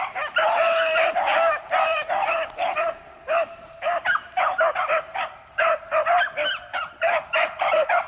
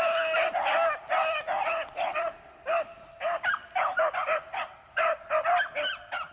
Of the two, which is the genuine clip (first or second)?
second